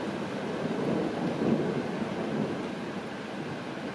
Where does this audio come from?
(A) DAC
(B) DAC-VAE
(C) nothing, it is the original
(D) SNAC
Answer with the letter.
C